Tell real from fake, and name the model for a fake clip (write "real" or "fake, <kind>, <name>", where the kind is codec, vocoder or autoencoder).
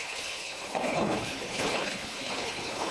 fake, codec, HILCodec